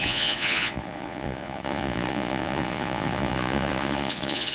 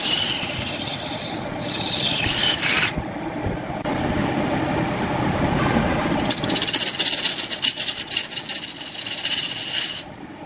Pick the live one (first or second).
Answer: second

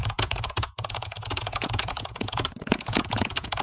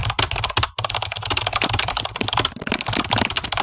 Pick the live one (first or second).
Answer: second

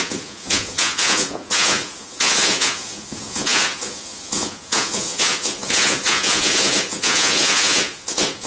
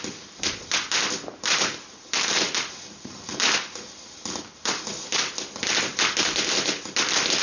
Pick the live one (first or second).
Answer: second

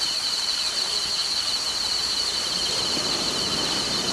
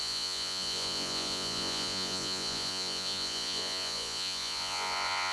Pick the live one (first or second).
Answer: first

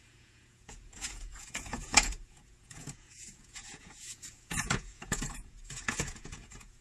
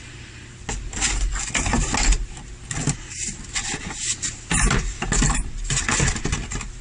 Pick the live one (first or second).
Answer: second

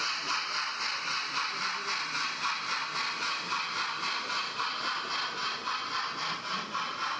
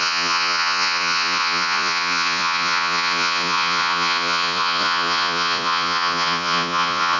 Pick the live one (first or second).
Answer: first